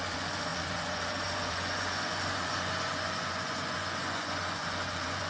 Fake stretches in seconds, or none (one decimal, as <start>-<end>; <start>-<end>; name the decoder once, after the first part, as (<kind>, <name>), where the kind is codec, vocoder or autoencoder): 0.0-5.3 (vocoder, Vocos)